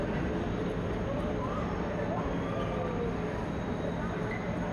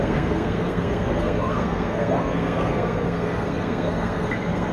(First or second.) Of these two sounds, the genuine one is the first